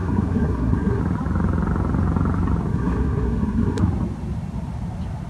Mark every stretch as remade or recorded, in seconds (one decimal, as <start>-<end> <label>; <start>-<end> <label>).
0.0-1.0 remade; 1.0-2.7 recorded; 2.7-3.8 remade; 3.8-5.3 recorded